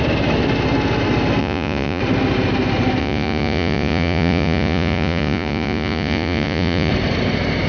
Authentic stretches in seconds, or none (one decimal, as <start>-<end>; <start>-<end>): 0.0-1.4; 2.0-3.0; 6.9-7.7